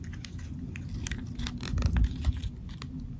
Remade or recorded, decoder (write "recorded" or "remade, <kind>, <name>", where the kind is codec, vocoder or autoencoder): recorded